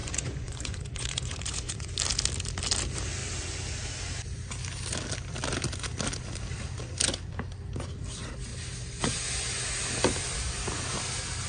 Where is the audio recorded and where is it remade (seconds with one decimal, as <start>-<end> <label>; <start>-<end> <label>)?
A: 0.0-1.9 remade; 1.9-11.5 recorded